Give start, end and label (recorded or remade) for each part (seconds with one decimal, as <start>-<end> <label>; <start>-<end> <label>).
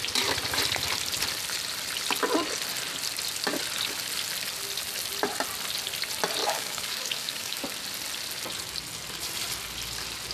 0.0-6.4 recorded; 6.4-7.6 remade; 7.6-10.3 recorded